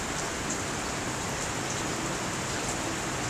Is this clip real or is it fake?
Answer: real